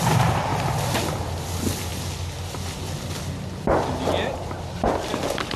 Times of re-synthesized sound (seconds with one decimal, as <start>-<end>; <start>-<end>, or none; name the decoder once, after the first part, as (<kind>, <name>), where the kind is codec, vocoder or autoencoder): none